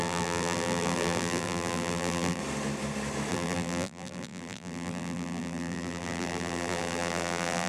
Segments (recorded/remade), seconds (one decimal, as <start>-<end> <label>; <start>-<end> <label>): 0.0-2.4 remade; 2.4-3.3 recorded; 3.3-7.7 remade